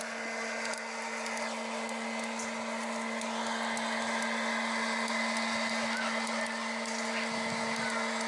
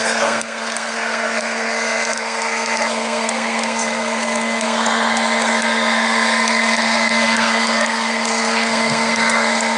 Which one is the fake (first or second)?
second